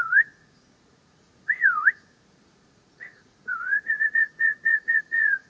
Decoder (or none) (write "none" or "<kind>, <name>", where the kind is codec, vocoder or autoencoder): vocoder, Vocos